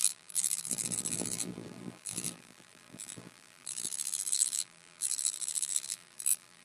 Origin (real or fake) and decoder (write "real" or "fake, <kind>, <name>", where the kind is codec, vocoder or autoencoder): fake, vocoder, BigVGAN v2